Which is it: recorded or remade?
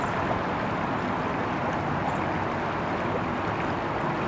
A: recorded